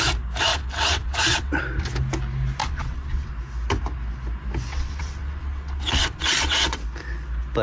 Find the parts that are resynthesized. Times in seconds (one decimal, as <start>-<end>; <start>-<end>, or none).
0.5-1.6; 2.6-3.3; 4.7-6.8